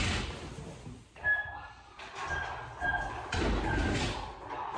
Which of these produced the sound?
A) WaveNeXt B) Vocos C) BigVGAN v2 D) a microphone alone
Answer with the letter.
D